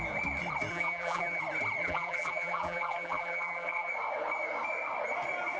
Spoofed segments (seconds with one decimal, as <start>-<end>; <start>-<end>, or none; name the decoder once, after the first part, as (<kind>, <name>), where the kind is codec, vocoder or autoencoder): 0.7-1.4 (vocoder, BigVGAN v2); 1.8-3.9